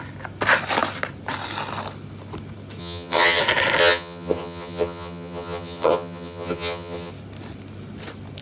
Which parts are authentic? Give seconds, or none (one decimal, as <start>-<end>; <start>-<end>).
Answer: 0.0-2.8; 3.4-3.8; 7.1-8.4